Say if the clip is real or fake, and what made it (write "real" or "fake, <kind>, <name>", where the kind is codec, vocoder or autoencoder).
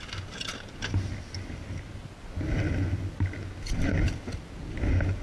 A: real